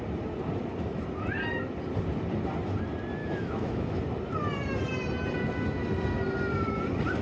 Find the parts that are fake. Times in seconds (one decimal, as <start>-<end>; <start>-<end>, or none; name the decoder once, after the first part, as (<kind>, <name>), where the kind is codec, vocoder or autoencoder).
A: 3.2-4.0 (autoencoder, DAC-VAE)

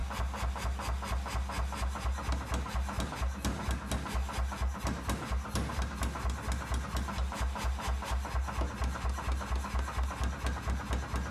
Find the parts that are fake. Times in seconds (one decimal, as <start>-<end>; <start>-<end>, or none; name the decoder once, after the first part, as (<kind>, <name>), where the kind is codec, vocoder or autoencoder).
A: none

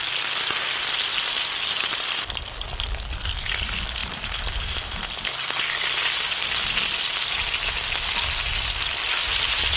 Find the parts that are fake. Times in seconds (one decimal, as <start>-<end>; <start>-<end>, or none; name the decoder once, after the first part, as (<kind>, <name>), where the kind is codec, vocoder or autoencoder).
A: none

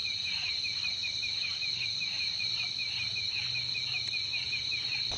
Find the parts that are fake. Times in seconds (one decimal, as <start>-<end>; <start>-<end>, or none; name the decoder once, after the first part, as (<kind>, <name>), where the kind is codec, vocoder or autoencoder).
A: 0.0-3.1 (vocoder, BigVGAN v2)